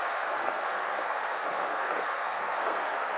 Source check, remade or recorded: remade